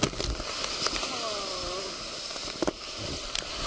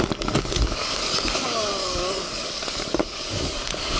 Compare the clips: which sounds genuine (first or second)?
first